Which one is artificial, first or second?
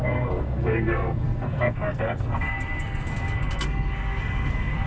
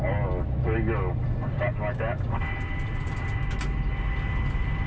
first